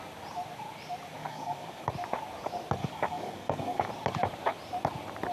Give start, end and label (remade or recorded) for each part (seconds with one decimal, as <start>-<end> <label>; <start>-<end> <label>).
0.0-1.2 recorded; 1.2-1.9 remade; 1.9-2.8 recorded; 2.8-3.9 remade; 3.9-5.3 recorded